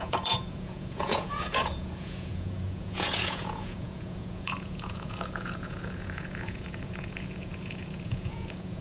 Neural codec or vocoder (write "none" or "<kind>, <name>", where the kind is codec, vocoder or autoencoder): vocoder, Vocos